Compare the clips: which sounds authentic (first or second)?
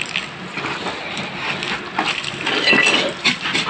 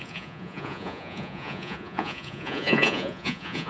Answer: first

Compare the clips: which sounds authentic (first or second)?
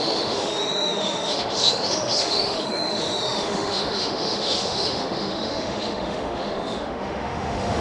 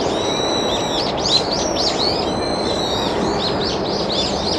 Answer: second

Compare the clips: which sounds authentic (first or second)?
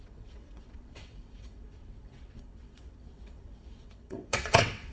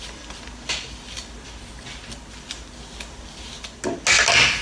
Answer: second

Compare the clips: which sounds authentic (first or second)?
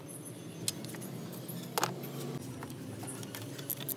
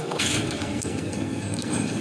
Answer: first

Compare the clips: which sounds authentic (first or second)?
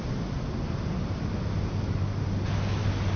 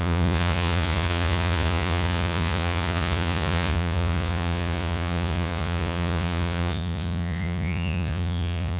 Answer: first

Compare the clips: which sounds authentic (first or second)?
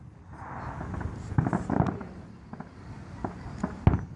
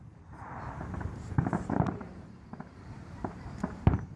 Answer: first